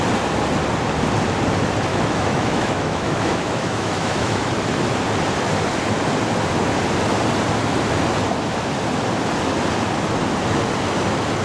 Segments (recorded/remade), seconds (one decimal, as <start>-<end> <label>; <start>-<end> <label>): 0.0-1.9 recorded; 1.9-4.5 remade; 4.5-11.4 recorded